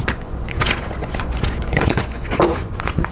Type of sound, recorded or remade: remade